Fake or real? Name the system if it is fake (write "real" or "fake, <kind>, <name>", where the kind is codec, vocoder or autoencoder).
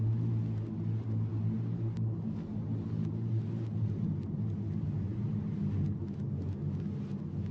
real